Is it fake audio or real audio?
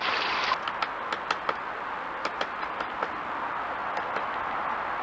real